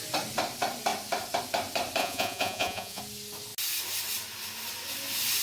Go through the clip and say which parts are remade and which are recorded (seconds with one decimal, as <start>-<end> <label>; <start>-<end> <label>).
0.0-2.0 recorded; 2.0-3.0 remade; 3.0-5.4 recorded